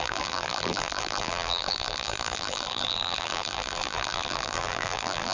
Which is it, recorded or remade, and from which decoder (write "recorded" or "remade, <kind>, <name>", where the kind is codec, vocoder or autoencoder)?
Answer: remade, vocoder, BigVGAN v2